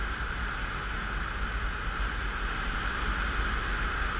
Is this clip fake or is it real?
real